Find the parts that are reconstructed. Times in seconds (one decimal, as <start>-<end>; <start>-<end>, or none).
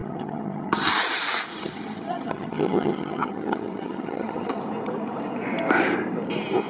0.0-0.9; 1.5-4.6